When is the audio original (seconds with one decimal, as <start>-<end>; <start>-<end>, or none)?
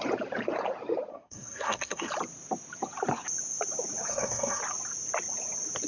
0.0-1.1; 2.1-4.1; 4.6-5.9